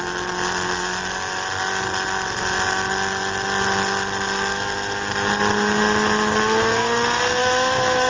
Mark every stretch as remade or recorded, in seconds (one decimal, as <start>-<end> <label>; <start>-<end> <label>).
0.0-7.4 recorded; 7.4-8.1 remade